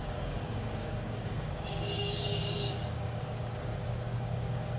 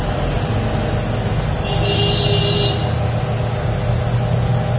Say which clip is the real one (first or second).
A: second